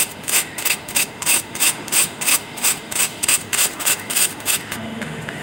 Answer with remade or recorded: remade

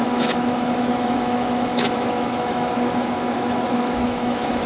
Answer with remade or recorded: remade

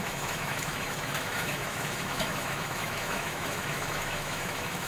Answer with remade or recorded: remade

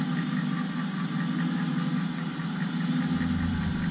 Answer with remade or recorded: recorded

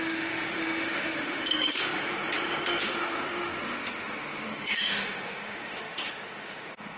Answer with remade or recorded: remade